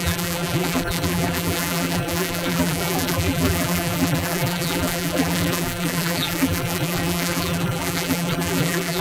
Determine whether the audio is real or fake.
fake